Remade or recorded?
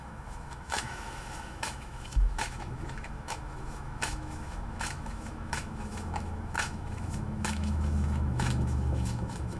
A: remade